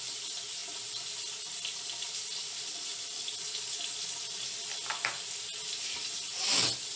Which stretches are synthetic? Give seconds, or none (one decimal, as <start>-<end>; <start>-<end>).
0.0-2.9; 6.3-7.0